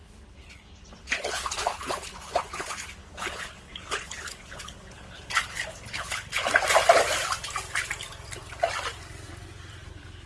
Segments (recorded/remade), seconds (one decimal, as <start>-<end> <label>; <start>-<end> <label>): 0.0-6.4 remade; 6.4-9.9 recorded; 9.9-10.3 remade